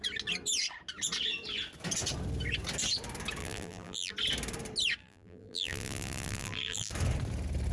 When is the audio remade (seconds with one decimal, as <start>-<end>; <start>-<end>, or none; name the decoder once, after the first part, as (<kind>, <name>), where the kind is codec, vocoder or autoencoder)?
3.4-4.1 (vocoder, BigVGAN v2); 5.0-6.9